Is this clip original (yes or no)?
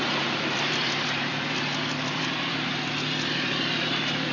no